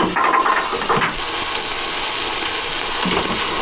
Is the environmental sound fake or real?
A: real